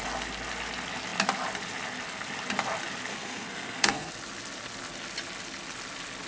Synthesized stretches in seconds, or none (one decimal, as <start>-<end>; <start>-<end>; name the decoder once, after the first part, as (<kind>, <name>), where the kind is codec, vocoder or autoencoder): 3.1-4.1 (codec, SNAC)